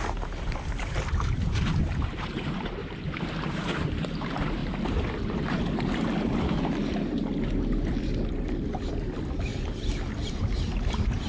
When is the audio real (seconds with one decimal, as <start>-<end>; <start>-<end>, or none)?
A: 4.6-8.9; 9.5-10.3